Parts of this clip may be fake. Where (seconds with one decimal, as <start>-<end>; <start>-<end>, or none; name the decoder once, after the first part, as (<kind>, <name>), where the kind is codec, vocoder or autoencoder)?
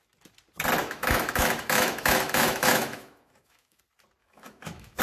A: 0.8-3.8 (autoencoder, DAC-VAE); 4.2-5.0